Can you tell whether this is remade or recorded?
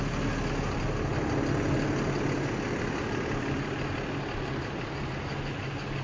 recorded